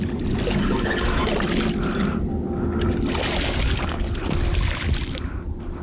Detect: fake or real real